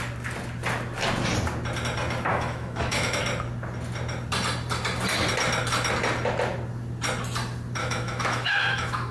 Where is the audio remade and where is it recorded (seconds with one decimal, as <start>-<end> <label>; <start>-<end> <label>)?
0.0-2.3 recorded; 2.3-3.2 remade; 3.2-7.8 recorded; 7.8-9.1 remade